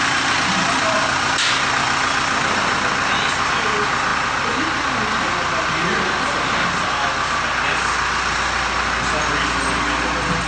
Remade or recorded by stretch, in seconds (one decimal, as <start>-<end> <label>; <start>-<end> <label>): 0.0-10.5 recorded